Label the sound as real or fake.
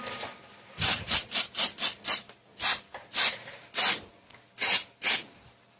real